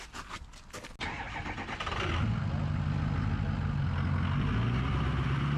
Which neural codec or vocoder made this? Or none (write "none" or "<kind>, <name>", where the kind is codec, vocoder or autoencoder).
none